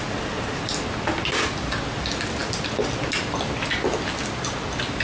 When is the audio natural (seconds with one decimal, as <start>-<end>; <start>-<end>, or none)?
0.0-5.0